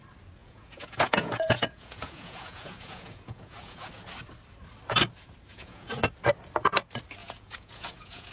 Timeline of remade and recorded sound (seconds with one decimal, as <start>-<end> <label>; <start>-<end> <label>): 0.0-0.4 recorded; 0.4-3.9 remade; 3.9-5.5 recorded; 5.5-6.0 remade; 6.0-7.2 recorded; 7.2-8.3 remade